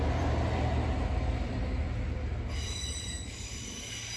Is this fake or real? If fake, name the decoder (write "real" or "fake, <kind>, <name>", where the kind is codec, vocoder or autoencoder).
fake, vocoder, BigVGAN v2